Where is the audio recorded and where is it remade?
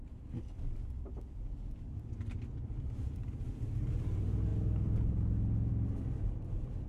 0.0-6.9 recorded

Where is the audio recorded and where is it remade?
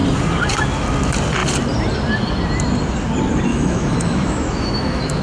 0.0-3.5 recorded; 3.5-5.2 remade